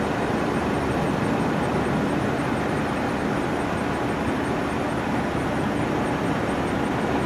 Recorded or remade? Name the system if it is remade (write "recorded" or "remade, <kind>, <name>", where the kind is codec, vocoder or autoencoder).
recorded